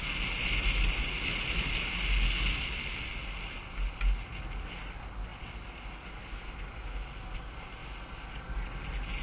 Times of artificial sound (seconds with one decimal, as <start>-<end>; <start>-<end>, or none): none